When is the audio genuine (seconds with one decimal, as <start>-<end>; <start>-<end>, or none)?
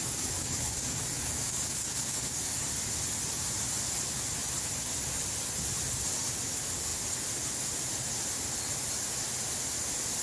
2.6-10.2